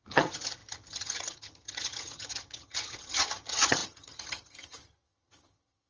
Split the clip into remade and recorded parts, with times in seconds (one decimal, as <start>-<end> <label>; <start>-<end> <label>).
0.0-5.9 remade